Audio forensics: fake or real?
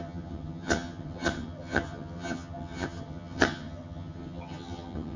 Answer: fake